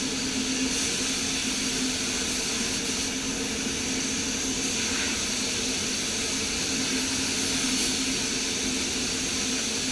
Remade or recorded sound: recorded